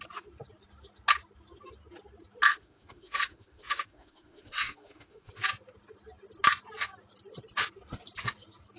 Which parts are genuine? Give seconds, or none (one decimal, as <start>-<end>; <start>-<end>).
0.0-2.5; 5.3-8.8